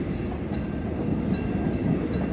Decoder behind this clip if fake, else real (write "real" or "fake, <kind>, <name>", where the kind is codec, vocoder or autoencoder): real